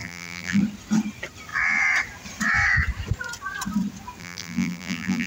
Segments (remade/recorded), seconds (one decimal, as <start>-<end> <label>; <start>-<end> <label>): 0.0-0.6 remade; 0.6-4.2 recorded; 4.2-5.3 remade